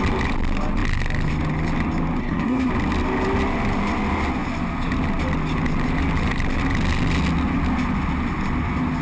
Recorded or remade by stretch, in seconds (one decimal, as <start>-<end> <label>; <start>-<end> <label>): 0.0-2.2 recorded; 2.2-2.7 remade; 2.7-9.0 recorded